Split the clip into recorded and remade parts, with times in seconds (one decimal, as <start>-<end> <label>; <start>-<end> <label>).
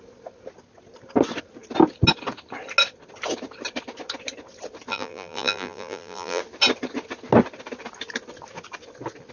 0.0-4.9 recorded; 4.9-6.4 remade; 6.4-9.3 recorded